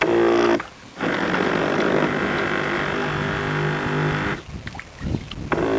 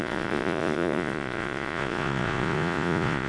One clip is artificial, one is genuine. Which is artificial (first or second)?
second